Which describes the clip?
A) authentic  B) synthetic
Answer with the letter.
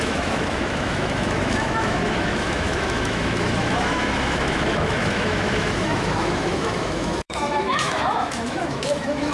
B